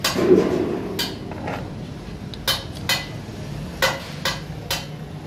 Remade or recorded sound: recorded